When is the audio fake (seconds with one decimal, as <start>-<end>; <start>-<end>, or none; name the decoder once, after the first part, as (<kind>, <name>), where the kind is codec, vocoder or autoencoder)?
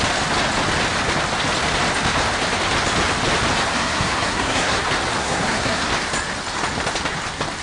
3.7-4.8 (codec, SNAC); 5.2-5.9